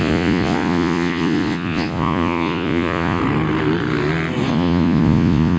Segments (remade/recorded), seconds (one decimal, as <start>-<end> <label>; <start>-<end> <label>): 0.0-3.2 remade; 3.2-4.5 recorded; 4.5-5.6 remade